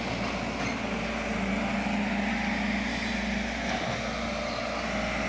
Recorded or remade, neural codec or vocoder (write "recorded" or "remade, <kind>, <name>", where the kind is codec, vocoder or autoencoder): recorded